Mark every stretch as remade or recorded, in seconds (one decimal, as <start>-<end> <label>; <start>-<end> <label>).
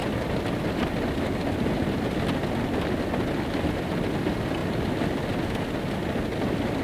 0.0-6.8 recorded